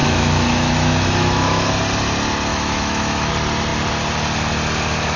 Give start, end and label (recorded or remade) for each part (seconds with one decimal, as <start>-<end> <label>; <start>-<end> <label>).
0.0-1.7 remade; 1.7-2.5 recorded; 2.5-3.3 remade; 3.3-5.2 recorded